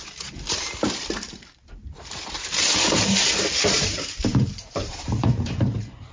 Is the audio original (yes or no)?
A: no